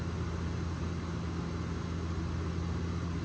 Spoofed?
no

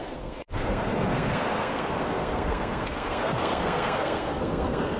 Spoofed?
yes